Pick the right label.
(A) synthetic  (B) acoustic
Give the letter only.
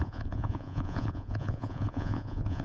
A